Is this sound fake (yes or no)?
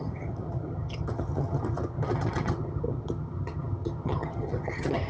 yes